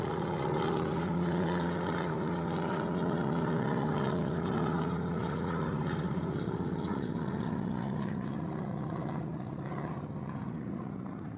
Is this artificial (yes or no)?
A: yes